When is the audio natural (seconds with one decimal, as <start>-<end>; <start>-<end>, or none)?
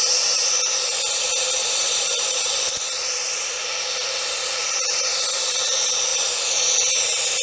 0.0-1.6; 2.8-7.4